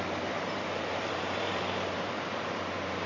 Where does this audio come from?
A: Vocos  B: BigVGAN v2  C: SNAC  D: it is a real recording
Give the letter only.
B